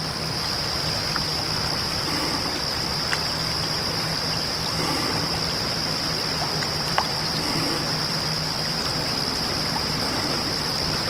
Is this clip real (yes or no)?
yes